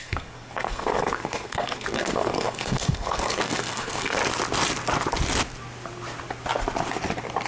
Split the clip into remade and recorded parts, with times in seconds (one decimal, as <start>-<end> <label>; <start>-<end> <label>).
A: 0.0-4.2 remade; 4.2-7.5 recorded